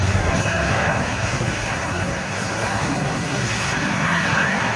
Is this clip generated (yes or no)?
yes